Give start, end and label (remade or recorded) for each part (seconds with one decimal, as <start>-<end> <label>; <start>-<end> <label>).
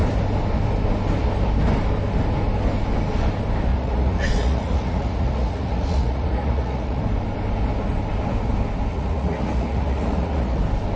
0.0-3.7 recorded; 3.7-7.0 remade; 7.0-8.9 recorded; 8.9-10.6 remade; 10.6-11.0 recorded